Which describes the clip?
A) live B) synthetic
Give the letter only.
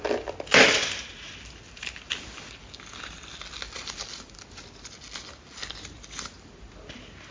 A